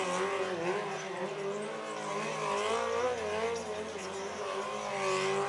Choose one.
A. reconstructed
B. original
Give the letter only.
B